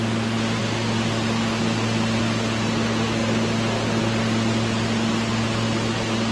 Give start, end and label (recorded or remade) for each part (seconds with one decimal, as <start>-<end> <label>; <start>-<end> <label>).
0.0-6.3 recorded